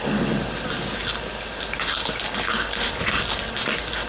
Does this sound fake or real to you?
real